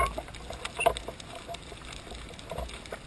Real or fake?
real